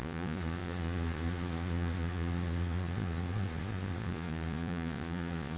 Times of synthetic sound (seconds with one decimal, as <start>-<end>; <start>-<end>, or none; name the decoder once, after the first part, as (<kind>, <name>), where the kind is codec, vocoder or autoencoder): 0.0-5.6 (vocoder, Vocos)

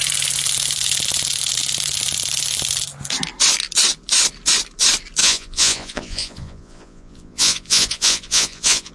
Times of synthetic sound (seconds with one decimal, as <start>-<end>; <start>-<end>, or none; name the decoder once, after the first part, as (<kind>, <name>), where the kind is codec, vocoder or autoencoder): 5.2-8.9 (vocoder, Vocos)